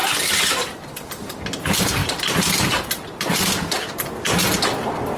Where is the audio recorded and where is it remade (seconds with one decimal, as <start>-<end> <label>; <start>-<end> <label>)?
0.0-5.2 recorded